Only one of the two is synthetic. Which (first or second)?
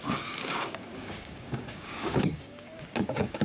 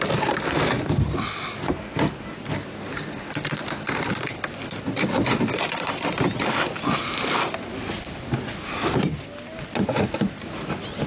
first